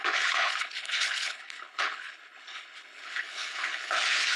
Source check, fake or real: fake